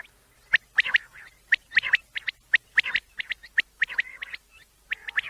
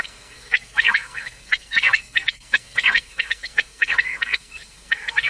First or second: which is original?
first